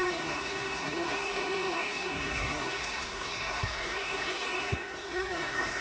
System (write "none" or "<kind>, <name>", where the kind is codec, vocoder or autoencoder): codec, SNAC